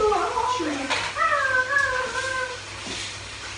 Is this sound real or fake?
real